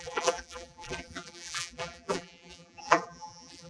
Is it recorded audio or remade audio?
remade